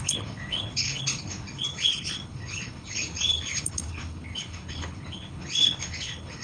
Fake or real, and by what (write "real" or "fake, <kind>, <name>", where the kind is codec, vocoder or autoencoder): fake, codec, HILCodec